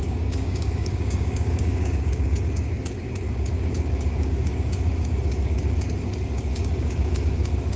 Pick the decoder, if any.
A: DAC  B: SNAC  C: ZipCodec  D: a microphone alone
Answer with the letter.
A